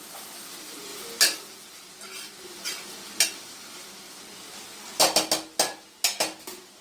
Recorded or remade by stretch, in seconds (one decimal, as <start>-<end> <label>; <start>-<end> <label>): 0.0-6.8 recorded